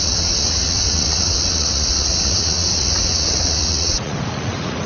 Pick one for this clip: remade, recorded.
remade